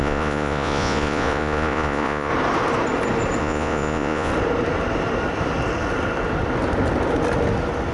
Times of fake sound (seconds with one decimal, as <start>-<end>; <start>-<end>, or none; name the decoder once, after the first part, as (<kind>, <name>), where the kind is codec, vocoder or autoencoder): 0.0-2.3 (vocoder, Vocos); 3.4-4.3